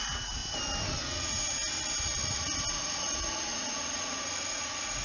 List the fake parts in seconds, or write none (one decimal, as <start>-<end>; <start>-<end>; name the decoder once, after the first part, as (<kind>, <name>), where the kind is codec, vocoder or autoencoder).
0.0-0.4 (vocoder, Vocos); 1.0-1.6; 2.3-5.0